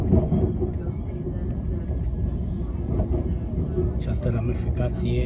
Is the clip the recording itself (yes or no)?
yes